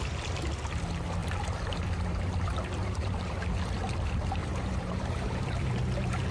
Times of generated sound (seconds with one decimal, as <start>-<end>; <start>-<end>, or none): 1.2-3.4; 4.4-6.3

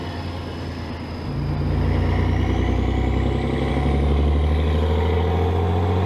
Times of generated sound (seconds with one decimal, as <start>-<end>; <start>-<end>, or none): none